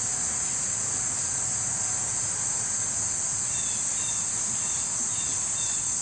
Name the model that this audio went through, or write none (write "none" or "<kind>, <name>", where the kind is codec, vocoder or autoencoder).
none